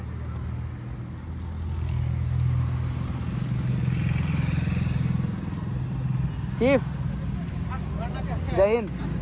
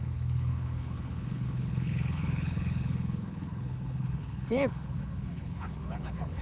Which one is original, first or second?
first